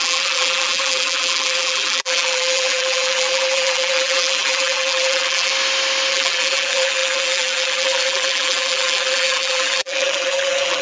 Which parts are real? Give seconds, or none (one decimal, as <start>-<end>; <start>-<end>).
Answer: 5.5-6.1